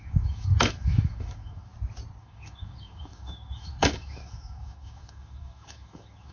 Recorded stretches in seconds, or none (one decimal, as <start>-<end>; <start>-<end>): 1.7-2.2